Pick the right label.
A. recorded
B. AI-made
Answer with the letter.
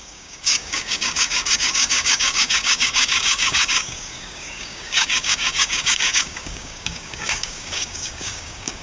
B